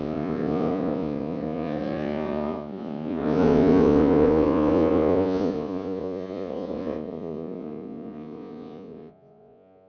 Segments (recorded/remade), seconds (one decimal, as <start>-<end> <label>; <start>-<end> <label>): 0.0-9.9 remade